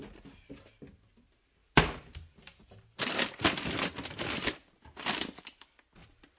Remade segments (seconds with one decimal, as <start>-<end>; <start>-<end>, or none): none